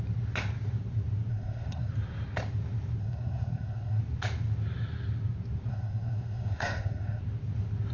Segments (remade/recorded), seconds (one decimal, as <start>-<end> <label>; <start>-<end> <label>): 0.0-1.3 recorded; 1.3-1.9 remade; 1.9-3.0 recorded; 3.0-4.0 remade; 4.0-5.7 recorded; 5.7-7.2 remade; 7.2-7.9 recorded